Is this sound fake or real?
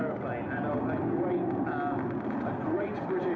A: real